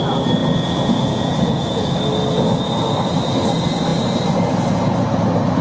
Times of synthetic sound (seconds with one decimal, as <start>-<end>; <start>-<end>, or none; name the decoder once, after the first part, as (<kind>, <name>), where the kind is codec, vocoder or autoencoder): 0.4-1.9 (vocoder, Vocos)